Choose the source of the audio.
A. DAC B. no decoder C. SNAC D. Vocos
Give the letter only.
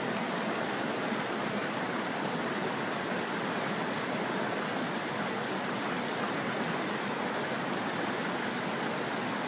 B